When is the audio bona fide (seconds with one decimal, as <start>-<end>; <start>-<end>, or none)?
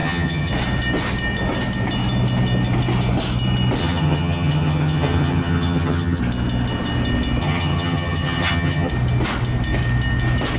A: 0.5-3.8; 6.2-7.4; 8.9-10.6